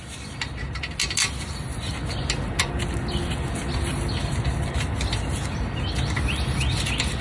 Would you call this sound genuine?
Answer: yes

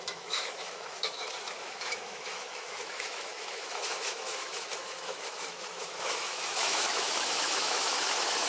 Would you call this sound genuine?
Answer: no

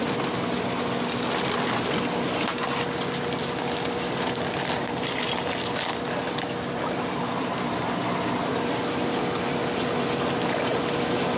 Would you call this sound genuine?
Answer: yes